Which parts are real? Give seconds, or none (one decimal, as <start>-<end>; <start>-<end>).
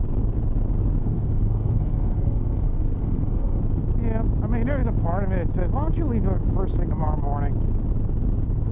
0.0-1.0; 3.6-8.7